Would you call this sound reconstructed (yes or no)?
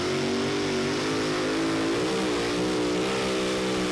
no